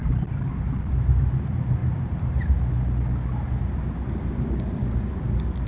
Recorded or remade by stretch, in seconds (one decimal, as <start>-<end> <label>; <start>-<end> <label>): 0.0-0.9 recorded; 0.9-5.7 remade